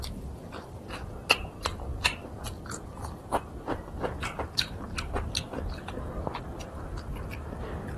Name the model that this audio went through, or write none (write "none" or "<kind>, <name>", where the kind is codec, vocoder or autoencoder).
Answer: none